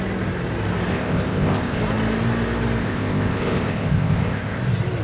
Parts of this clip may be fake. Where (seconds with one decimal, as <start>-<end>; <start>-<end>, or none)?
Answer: 0.9-1.8; 2.8-4.6